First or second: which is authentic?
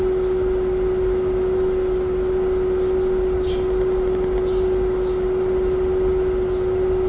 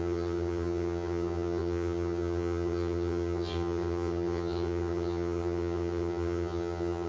first